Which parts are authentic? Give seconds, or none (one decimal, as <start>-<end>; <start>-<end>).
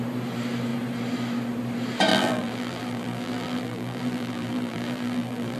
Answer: 0.0-2.1